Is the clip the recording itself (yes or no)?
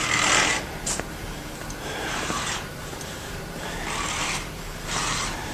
no